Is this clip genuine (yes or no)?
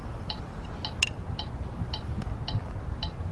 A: yes